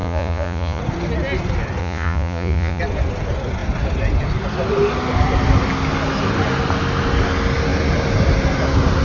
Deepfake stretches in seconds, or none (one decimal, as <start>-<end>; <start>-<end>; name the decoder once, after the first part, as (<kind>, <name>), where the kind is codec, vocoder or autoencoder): 0.0-0.8 (vocoder, Vocos); 1.8-2.8